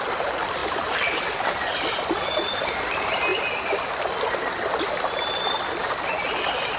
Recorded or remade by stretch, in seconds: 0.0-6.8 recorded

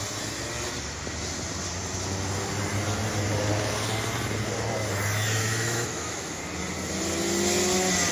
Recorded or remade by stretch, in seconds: 0.0-5.4 recorded; 5.4-6.4 remade; 6.4-8.1 recorded

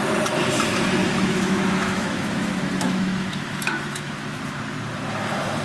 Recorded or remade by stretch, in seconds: 0.0-1.0 recorded; 1.0-4.4 remade; 4.4-5.6 recorded

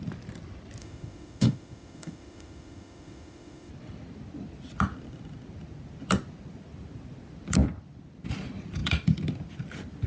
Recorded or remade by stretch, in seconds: 0.0-0.8 recorded; 0.8-3.7 remade; 3.7-10.1 recorded

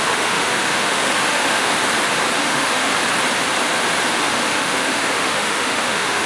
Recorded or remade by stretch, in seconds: 0.0-1.7 remade; 1.7-2.4 recorded; 2.4-2.9 remade; 2.9-4.1 recorded; 4.1-6.3 remade

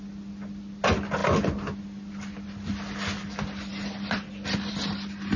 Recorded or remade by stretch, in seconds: 0.0-5.4 recorded

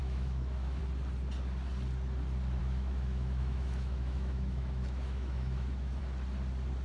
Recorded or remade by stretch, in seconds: 0.0-0.8 remade; 0.8-2.6 recorded; 2.6-6.0 remade; 6.0-6.8 recorded